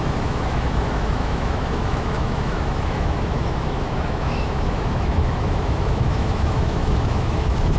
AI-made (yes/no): yes